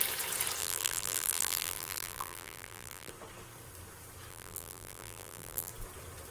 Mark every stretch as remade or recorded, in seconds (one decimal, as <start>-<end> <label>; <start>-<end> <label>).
0.0-0.6 recorded; 0.6-3.1 remade; 3.1-4.3 recorded; 4.3-5.7 remade; 5.7-6.3 recorded